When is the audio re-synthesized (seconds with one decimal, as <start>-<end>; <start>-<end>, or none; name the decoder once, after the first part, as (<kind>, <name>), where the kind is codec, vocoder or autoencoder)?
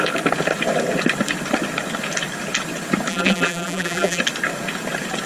3.1-4.2 (vocoder, BigVGAN v2)